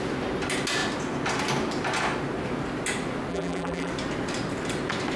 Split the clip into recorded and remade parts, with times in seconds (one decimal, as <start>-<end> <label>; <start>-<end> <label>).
0.0-3.3 recorded; 3.3-3.9 remade; 3.9-5.2 recorded